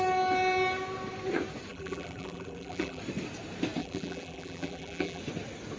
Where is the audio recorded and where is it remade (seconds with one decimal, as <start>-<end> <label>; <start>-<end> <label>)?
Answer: 0.0-1.7 recorded; 1.7-3.0 remade; 3.0-3.8 recorded; 3.8-5.2 remade; 5.2-5.8 recorded